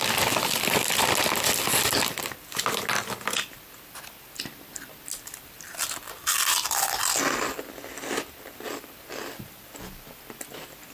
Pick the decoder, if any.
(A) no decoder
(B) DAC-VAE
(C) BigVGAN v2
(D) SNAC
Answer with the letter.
A